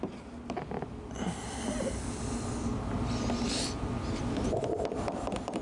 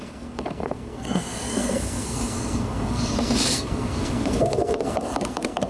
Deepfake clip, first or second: second